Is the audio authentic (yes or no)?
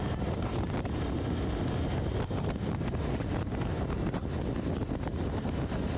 yes